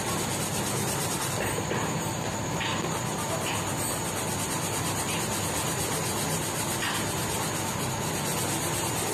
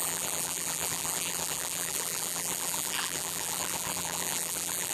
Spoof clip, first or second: second